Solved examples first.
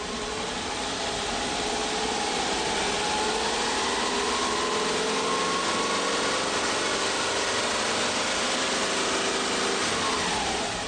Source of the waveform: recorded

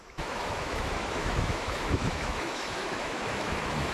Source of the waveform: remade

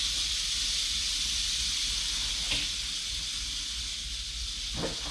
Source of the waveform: recorded